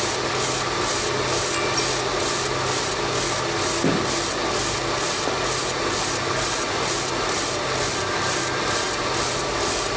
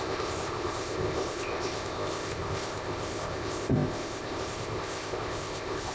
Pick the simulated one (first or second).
second